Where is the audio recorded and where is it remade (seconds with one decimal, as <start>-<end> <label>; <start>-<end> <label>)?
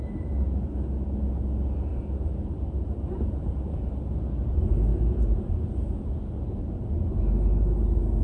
0.0-1.9 recorded; 1.9-4.2 remade; 4.2-4.9 recorded; 4.9-5.5 remade; 5.5-8.2 recorded